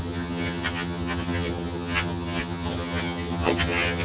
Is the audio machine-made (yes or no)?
yes